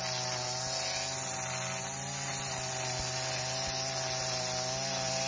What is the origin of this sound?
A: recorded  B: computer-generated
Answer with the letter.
A